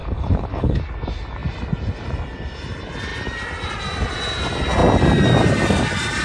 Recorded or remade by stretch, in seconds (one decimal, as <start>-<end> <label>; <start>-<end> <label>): 0.0-0.8 remade; 0.8-6.2 recorded